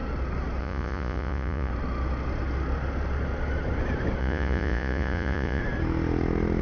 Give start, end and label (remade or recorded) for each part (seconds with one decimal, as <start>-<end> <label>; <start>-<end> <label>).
0.0-0.6 recorded; 0.6-1.7 remade; 1.7-4.2 recorded; 4.2-5.6 remade; 5.6-6.6 recorded